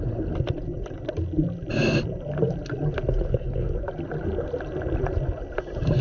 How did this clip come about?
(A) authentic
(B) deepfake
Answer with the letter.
A